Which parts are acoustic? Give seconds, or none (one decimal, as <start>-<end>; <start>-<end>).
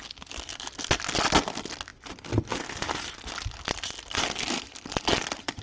0.0-5.6